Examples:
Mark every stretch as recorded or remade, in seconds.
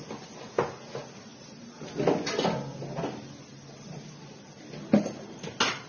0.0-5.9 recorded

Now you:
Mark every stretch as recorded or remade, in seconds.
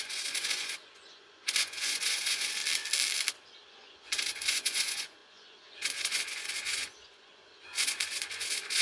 0.0-2.6 remade; 2.6-3.7 recorded; 3.7-8.8 remade